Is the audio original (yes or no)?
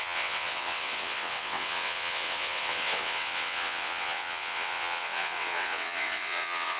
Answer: no